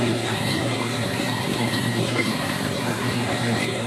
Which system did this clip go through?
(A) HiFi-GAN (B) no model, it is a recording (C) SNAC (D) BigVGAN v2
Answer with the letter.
C